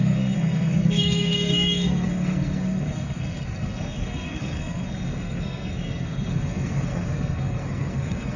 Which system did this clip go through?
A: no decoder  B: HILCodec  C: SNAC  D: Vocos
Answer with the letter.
C